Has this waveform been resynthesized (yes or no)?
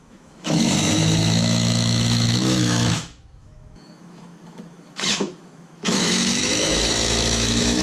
yes